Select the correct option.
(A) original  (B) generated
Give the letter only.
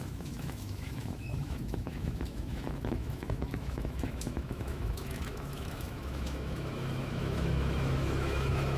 B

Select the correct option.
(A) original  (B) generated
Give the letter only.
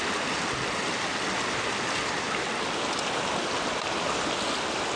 A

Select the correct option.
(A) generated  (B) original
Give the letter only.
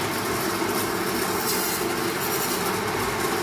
B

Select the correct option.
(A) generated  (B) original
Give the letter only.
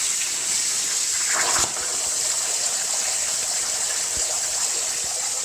B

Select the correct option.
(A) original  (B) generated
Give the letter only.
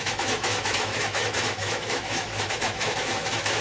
B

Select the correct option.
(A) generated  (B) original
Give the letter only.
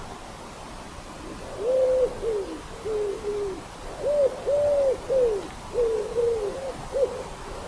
B